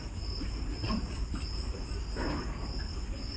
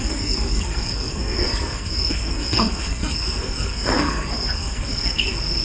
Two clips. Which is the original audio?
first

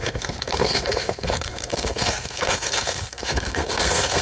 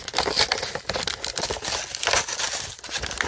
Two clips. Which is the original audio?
second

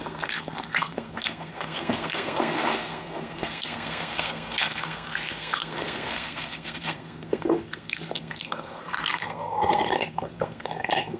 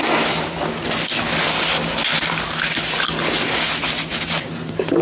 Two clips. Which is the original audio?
second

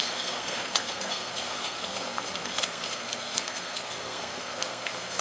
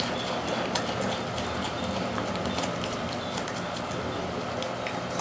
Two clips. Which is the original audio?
second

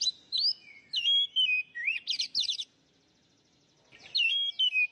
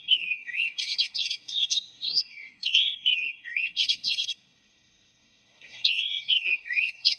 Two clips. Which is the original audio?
first